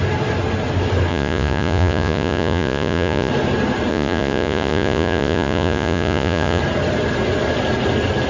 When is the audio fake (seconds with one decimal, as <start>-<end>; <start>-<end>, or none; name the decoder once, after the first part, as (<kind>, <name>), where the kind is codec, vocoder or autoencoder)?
1.1-3.3 (vocoder, Vocos); 3.9-6.6